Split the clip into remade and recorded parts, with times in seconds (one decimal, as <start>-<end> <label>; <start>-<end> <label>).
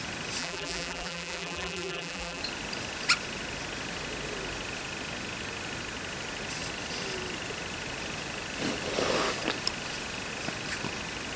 0.0-0.4 recorded; 0.4-2.4 remade; 2.4-11.4 recorded